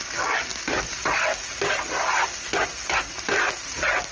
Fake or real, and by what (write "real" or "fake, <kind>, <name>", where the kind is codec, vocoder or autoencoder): real